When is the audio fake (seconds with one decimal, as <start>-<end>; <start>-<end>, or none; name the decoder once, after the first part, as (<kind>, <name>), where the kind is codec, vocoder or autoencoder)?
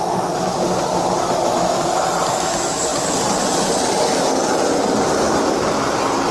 none